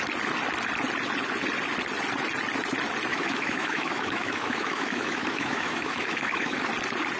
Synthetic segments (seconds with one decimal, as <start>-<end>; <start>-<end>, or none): 3.1-6.7